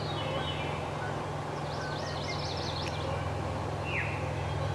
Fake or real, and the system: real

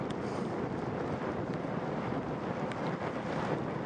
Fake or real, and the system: real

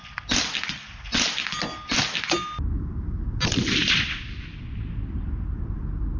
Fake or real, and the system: real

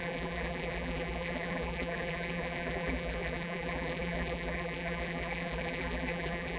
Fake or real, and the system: fake, vocoder, BigVGAN v2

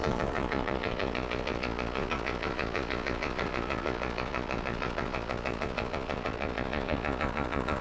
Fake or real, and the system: fake, vocoder, Vocos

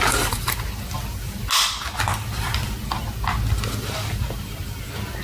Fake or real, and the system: real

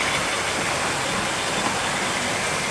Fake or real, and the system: real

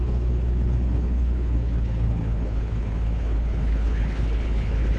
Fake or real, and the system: fake, codec, HILCodec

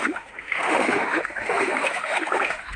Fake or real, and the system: fake, autoencoder, DAC-VAE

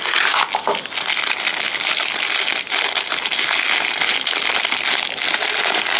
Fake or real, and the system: real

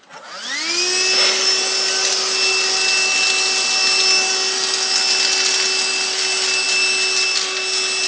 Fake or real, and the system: real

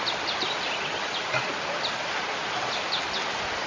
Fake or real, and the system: real